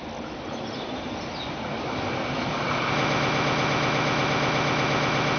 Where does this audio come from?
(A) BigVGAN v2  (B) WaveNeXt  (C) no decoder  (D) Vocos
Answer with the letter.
C